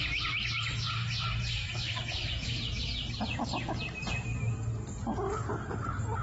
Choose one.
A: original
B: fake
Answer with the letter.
A